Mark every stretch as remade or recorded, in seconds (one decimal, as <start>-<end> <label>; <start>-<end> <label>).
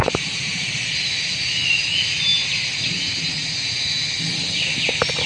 0.0-5.3 recorded